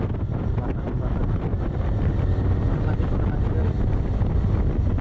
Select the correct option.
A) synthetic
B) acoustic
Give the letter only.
B